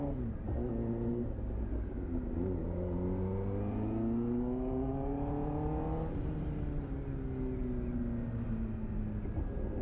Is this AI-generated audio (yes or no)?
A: no